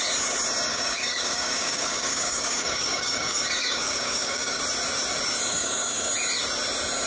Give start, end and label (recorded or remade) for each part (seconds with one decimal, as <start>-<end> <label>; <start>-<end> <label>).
0.0-0.7 recorded; 0.7-4.6 remade; 4.6-5.5 recorded; 5.5-6.1 remade; 6.1-7.1 recorded